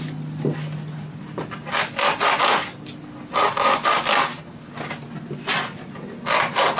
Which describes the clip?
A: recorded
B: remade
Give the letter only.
A